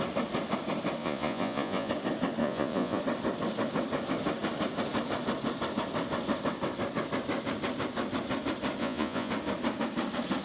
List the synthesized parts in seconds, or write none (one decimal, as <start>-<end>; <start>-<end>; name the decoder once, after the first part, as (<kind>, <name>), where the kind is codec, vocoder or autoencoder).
1.0-1.9 (vocoder, Vocos); 2.4-3.0; 8.8-9.3